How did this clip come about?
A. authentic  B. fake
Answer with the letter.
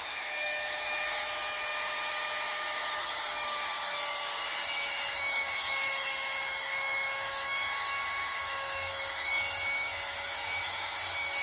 B